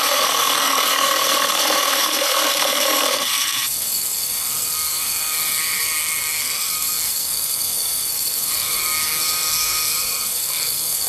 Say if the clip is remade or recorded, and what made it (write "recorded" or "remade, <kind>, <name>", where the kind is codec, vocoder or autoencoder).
remade, codec, SNAC